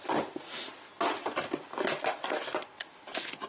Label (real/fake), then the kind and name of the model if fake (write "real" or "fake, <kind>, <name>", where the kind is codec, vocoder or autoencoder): real